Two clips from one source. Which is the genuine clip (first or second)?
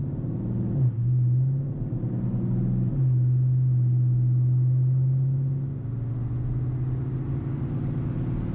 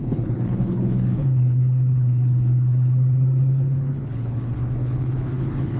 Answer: first